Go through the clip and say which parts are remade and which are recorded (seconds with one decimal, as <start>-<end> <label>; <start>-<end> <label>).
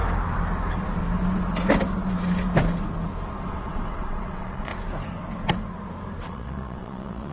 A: 0.0-3.5 recorded; 3.5-4.7 remade; 4.7-6.2 recorded; 6.2-7.3 remade